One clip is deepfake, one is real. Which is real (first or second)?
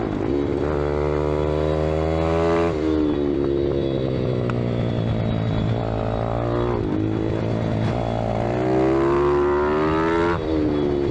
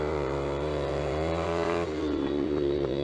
first